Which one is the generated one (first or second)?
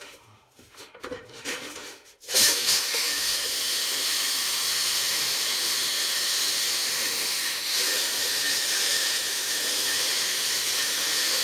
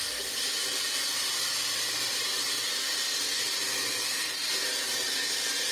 first